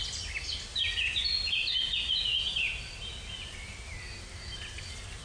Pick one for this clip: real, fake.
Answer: real